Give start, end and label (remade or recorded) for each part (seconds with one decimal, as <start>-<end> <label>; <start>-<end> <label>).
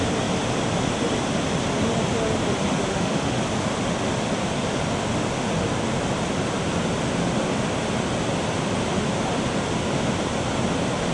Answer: 0.0-2.9 recorded; 2.9-3.4 remade; 3.4-11.1 recorded